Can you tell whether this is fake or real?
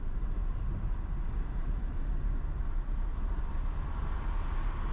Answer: real